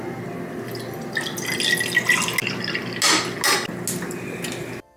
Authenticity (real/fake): real